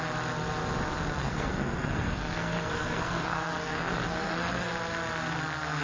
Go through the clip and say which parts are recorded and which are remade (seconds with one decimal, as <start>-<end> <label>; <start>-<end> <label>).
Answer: 0.0-1.2 recorded; 1.2-4.7 remade; 4.7-5.8 recorded